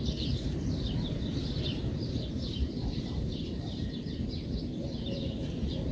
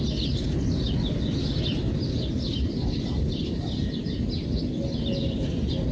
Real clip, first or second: second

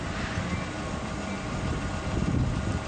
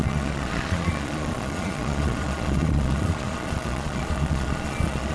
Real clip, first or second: first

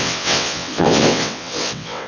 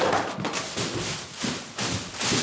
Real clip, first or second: second